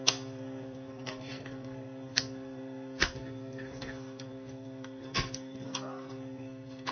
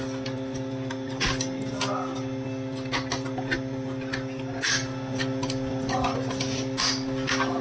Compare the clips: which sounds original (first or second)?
second